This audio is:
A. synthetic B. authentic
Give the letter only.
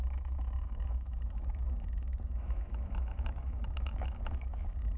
A